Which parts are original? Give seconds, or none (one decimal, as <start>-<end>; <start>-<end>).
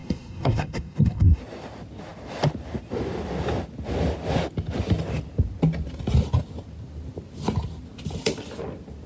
1.4-9.1